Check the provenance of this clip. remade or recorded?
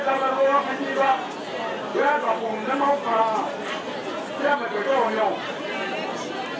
recorded